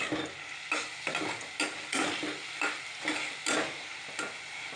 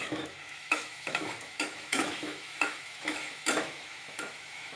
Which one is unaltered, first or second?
first